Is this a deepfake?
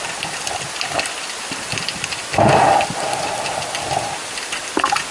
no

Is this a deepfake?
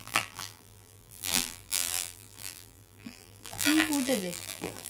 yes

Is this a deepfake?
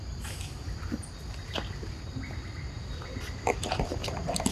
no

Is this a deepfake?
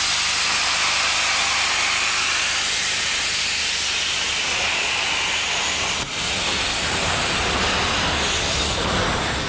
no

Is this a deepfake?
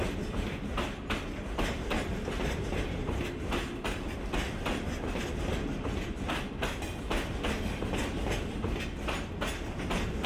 no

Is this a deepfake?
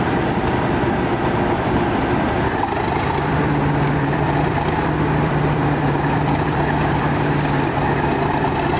yes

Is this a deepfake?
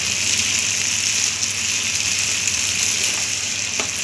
no